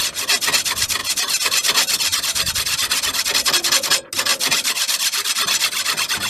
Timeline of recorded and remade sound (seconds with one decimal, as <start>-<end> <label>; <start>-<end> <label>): 0.0-1.0 recorded; 1.0-2.5 remade; 2.5-4.3 recorded; 4.3-5.3 remade; 5.3-6.3 recorded